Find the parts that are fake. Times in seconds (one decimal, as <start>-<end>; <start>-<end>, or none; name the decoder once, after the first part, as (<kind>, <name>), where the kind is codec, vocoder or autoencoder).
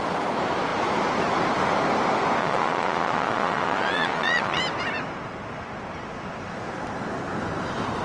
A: 2.4-4.6 (vocoder, Vocos)